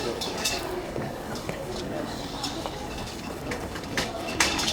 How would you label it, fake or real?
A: fake